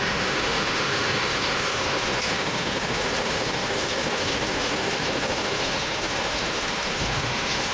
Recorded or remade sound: remade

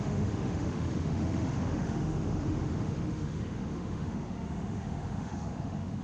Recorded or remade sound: remade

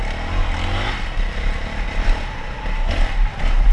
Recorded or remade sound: recorded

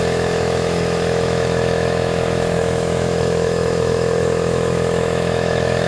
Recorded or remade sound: remade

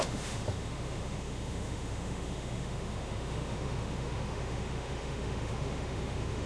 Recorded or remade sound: remade